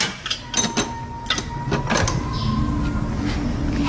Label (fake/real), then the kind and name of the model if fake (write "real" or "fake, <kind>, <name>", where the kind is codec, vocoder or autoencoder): real